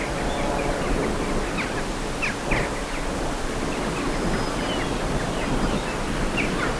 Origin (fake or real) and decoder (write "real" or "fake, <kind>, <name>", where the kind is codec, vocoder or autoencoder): real